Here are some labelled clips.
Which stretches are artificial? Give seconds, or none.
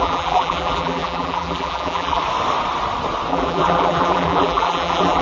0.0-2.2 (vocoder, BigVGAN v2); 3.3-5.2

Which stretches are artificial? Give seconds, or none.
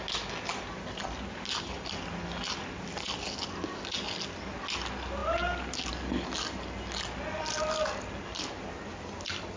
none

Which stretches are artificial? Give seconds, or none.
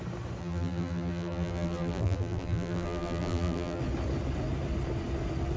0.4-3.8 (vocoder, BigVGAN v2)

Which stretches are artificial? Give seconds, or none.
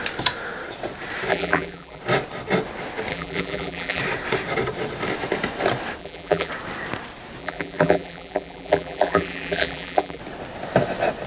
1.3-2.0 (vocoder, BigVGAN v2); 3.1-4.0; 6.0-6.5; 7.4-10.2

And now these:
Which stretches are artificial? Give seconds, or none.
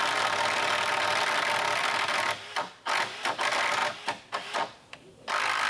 0.0-3.8 (vocoder, BigVGAN v2); 5.2-5.7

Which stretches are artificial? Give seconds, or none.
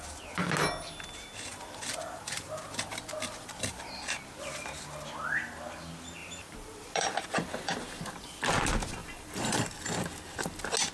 1.5-3.9 (vocoder, BigVGAN v2); 6.2-8.4; 9.0-9.7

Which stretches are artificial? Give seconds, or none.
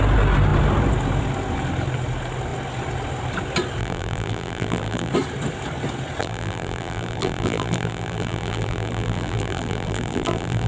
3.8-5.1 (vocoder, BigVGAN v2); 6.2-10.7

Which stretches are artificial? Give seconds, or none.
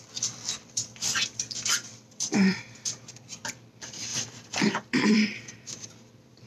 2.1-2.6 (vocoder, BigVGAN v2); 4.1-5.1